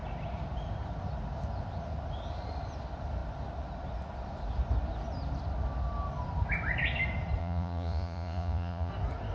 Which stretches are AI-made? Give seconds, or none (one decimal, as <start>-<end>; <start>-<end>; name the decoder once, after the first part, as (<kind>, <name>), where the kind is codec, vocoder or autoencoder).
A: 7.4-8.9 (vocoder, Vocos)